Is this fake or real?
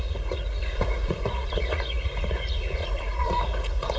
fake